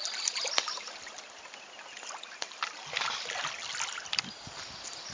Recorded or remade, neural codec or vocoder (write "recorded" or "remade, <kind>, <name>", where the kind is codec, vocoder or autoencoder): recorded